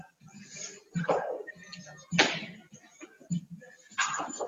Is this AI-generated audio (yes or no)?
no